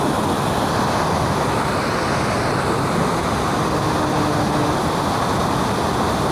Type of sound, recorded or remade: recorded